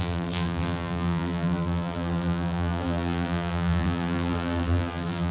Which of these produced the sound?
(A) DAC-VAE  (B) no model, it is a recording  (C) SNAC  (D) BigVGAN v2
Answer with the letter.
D